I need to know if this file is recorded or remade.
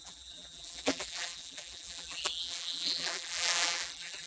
remade